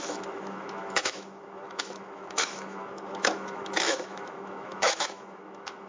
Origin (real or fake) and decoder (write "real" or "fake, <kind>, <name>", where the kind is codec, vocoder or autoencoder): fake, autoencoder, DAC-VAE